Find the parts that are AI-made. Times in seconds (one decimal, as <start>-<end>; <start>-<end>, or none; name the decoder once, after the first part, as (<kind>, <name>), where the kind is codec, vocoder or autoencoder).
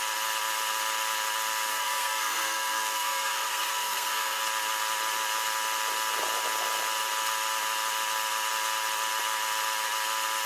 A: 1.7-4.4 (codec, SNAC)